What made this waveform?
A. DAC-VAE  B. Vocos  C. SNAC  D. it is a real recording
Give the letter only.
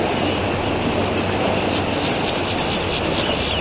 D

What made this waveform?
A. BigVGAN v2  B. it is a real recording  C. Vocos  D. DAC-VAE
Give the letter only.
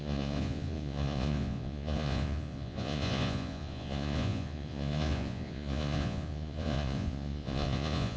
C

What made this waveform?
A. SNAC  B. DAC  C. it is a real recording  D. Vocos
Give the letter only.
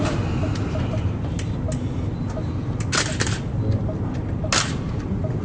C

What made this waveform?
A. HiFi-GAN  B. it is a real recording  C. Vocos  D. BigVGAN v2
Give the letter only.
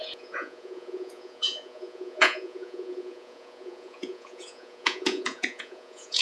C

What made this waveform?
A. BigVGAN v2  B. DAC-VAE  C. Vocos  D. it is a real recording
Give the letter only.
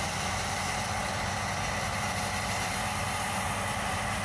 D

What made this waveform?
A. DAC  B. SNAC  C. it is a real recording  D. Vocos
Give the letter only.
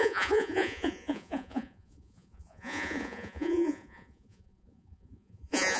D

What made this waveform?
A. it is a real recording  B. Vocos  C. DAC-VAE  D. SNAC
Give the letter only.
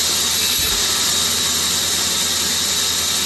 A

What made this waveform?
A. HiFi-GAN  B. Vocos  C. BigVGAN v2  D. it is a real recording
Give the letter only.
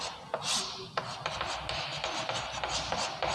D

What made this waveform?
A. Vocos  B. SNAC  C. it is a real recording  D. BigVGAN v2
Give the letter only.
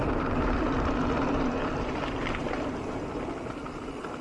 C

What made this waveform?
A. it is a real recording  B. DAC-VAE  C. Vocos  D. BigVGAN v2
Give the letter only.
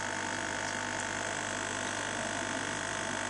A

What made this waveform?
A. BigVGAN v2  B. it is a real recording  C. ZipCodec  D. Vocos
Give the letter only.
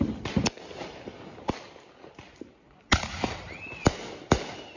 B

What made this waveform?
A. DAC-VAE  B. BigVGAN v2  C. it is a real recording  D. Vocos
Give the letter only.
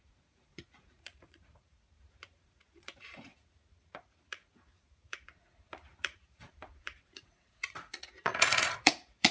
D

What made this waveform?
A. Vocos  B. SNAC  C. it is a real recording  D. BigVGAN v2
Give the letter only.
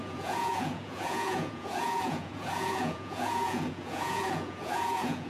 A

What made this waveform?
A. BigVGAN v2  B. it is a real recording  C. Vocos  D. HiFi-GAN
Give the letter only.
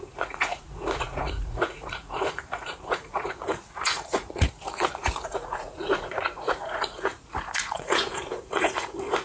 C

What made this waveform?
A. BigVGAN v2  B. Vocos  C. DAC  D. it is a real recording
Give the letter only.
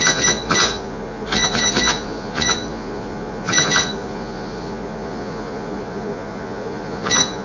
B